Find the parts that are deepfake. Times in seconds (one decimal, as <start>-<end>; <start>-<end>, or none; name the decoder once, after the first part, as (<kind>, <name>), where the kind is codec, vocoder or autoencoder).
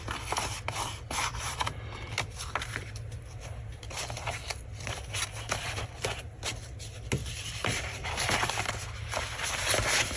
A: 7.2-8.7 (vocoder, BigVGAN v2)